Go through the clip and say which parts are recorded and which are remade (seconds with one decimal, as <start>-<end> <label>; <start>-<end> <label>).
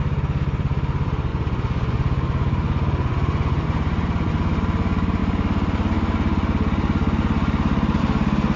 0.0-1.3 recorded; 1.3-4.3 remade; 4.3-8.6 recorded